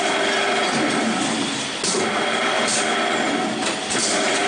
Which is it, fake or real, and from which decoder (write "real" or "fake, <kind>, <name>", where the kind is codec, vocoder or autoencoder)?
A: real